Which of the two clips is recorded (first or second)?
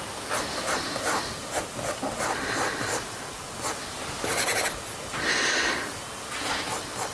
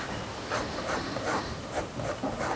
first